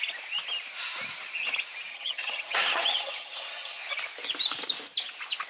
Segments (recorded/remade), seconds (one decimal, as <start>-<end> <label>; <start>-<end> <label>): 0.0-1.9 recorded; 1.9-3.8 remade; 3.8-5.5 recorded